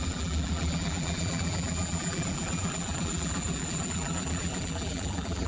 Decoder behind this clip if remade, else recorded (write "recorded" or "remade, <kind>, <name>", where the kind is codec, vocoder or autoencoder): remade, vocoder, BigVGAN v2